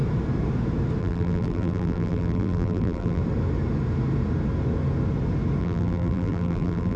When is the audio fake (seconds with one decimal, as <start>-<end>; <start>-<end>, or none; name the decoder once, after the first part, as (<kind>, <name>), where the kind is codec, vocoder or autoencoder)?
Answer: 1.0-3.2 (vocoder, BigVGAN v2); 5.6-7.0